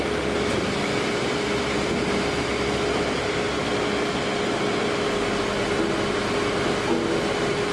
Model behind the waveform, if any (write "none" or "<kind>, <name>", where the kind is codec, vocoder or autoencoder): none